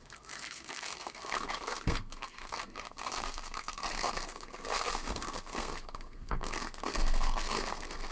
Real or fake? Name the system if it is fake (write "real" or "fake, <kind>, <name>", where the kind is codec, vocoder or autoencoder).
fake, codec, SNAC